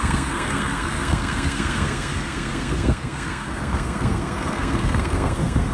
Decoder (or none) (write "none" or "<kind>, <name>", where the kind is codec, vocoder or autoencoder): codec, SNAC